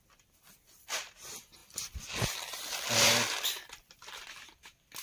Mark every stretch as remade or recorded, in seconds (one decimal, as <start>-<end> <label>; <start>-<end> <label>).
0.0-5.0 recorded

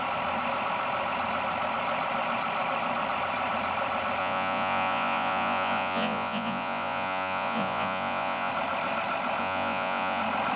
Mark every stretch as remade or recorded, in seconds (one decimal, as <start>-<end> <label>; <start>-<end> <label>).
0.0-4.2 recorded; 4.2-8.5 remade; 8.5-9.4 recorded; 9.4-10.2 remade; 10.2-10.6 recorded